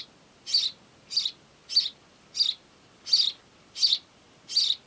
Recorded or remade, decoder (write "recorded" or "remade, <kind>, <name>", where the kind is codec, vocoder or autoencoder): recorded